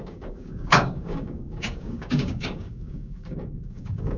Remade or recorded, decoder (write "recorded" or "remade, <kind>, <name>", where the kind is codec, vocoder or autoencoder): remade, codec, DAC